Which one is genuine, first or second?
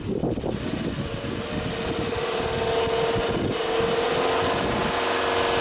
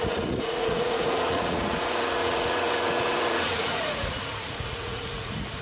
first